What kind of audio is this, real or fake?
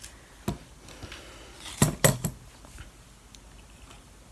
real